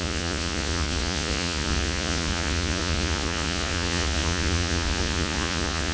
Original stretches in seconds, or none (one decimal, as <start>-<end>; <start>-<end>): none